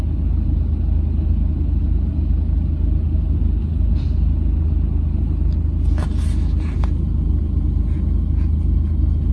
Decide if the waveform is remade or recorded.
recorded